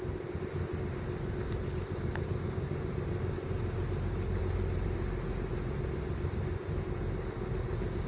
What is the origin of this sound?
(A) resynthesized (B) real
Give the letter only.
B